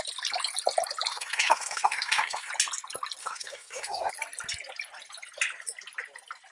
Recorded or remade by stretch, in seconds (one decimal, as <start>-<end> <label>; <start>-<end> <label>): 0.0-1.1 recorded; 1.1-2.5 remade; 2.5-3.2 recorded; 3.2-4.1 remade; 4.1-6.5 recorded